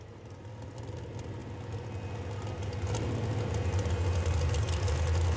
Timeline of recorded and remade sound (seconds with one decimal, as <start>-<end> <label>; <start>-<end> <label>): 0.0-5.4 recorded

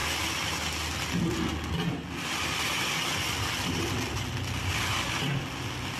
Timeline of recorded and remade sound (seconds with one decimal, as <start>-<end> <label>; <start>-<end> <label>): 0.0-6.0 recorded